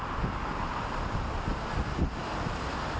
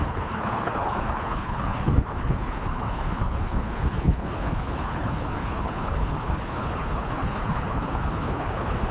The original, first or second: first